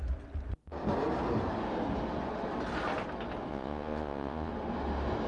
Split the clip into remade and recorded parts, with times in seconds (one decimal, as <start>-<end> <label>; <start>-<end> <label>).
0.0-3.5 recorded; 3.5-4.5 remade; 4.5-5.3 recorded